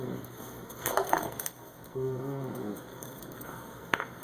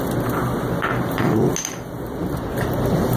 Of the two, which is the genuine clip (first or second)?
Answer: second